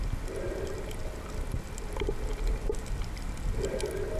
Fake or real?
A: real